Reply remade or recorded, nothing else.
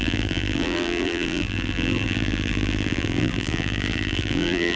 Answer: remade